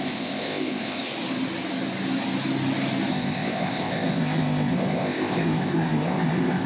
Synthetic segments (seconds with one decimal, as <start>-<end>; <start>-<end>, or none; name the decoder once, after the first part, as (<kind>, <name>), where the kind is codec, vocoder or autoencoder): 0.0-1.1 (codec, ZipCodec); 3.1-6.7